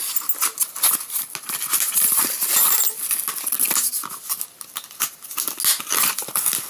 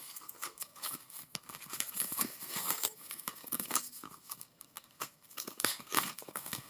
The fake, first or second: second